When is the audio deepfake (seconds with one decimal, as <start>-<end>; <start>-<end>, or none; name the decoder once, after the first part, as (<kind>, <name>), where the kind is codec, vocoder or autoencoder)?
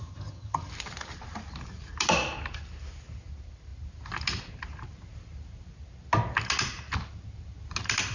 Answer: 0.0-0.7 (vocoder, HiFi-GAN)